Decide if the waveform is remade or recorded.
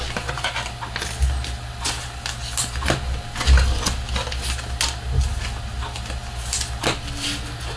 recorded